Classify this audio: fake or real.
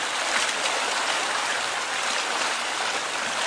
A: real